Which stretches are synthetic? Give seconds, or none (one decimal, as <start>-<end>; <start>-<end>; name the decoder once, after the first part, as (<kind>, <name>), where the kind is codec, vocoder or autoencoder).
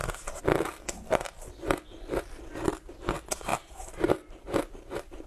3.5-4.7 (vocoder, BigVGAN v2)